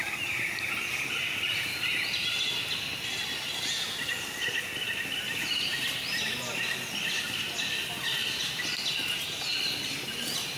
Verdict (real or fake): real